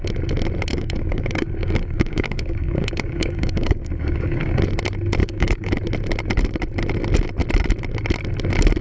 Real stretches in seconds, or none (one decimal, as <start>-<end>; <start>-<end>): 0.0-0.7; 4.5-5.2; 5.7-8.8

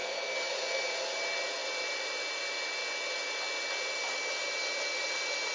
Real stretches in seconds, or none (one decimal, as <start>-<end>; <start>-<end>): 0.0-5.5

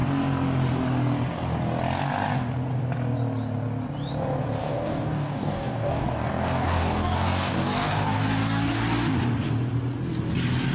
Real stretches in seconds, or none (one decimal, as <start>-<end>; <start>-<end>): 0.0-4.6; 8.8-10.7

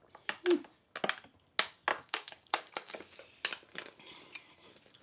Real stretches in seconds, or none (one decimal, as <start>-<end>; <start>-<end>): 0.0-1.9; 3.2-5.0

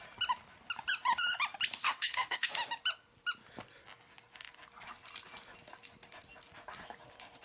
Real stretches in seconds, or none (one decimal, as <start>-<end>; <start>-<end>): 0.0-1.8; 2.5-7.4

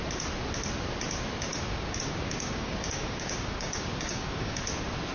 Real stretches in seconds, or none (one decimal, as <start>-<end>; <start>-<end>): 0.0-1.5; 4.6-5.1

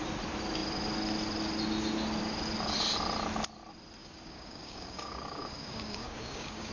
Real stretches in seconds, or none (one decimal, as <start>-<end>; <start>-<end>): 0.0-4.0